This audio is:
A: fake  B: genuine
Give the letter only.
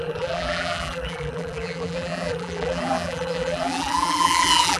A